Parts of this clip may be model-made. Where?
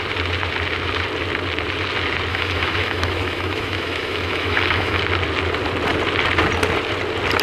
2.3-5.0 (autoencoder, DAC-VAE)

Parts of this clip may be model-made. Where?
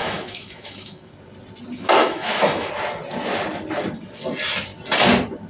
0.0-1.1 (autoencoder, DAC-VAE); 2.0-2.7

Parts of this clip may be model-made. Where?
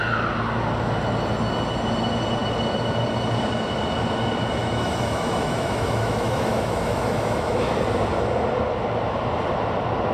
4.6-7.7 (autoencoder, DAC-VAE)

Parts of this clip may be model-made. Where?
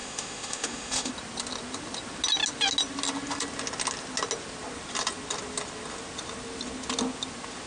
0.0-1.1 (autoencoder, DAC-VAE)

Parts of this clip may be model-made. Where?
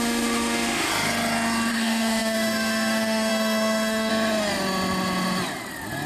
0.0-0.9 (autoencoder, DAC-VAE); 1.7-4.1